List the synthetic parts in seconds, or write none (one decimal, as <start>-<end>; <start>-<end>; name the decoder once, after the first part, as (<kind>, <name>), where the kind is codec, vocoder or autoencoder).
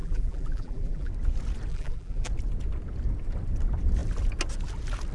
0.0-1.1 (vocoder, BigVGAN v2); 1.7-2.3